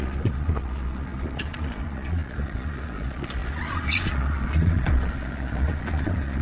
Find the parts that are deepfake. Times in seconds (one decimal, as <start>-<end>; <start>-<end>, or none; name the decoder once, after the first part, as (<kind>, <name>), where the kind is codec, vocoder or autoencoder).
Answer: 0.0-6.4 (vocoder, Vocos)